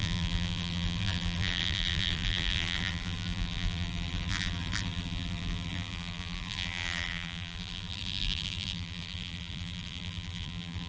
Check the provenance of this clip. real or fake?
fake